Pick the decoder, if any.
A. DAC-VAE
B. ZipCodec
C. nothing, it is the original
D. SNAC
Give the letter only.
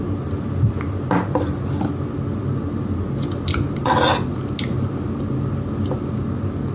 C